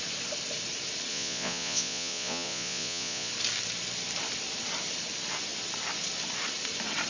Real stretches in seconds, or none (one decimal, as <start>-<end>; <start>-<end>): 0.0-1.1; 3.3-7.1